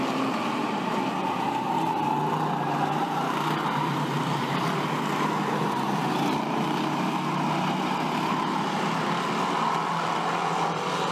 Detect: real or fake real